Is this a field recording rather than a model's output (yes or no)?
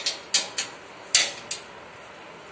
yes